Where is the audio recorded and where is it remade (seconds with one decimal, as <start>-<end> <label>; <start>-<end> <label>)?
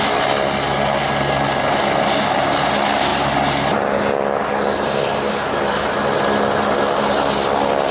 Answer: 0.0-7.9 recorded